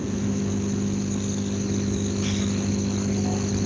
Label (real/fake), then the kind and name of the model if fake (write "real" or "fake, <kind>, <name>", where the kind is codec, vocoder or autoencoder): real